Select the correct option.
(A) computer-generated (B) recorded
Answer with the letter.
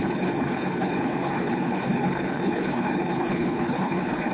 A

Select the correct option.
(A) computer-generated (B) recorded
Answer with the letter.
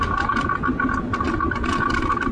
B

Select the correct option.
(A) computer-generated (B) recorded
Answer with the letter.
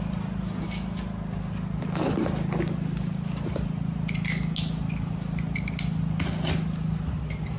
B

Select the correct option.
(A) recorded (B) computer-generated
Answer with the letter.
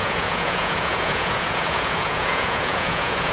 B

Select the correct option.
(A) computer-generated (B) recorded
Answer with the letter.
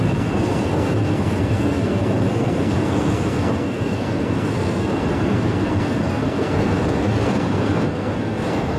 A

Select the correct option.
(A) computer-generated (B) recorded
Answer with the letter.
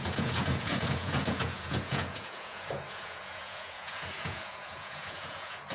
A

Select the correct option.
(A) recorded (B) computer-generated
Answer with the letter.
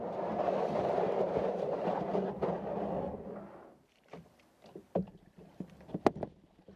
A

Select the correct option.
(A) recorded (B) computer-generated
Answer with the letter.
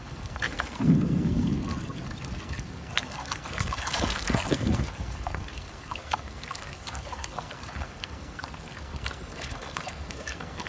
B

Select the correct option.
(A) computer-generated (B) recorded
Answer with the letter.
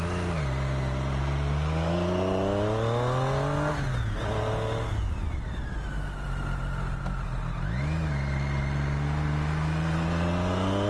B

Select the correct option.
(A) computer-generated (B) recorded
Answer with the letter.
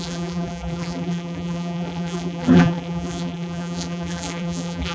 A